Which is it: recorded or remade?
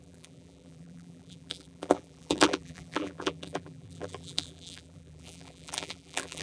remade